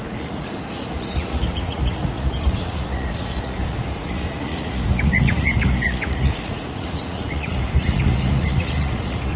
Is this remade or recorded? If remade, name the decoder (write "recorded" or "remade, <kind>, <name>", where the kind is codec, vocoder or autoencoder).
remade, vocoder, Vocos